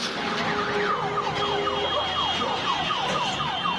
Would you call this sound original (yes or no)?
yes